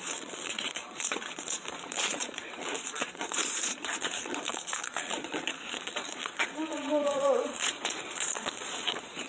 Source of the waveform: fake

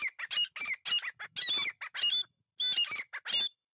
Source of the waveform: real